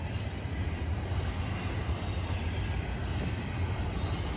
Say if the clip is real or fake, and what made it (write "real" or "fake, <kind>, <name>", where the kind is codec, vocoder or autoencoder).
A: real